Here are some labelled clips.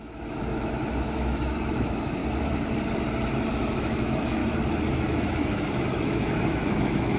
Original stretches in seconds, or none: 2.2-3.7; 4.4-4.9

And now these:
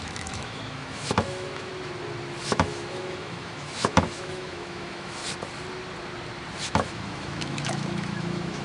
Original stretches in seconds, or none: 1.7-2.4; 5.2-6.6

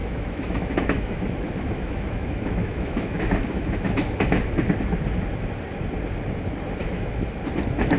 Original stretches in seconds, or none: 4.7-6.8; 7.4-8.0

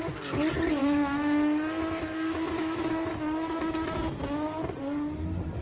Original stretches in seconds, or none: 0.0-0.8; 4.2-5.6

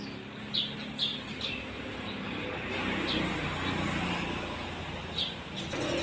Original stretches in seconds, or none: 0.0-6.0

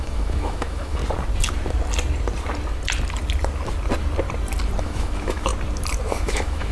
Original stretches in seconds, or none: 1.0-4.8; 5.5-6.1

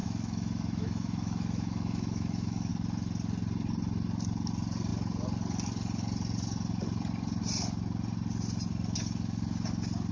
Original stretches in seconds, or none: 2.7-10.1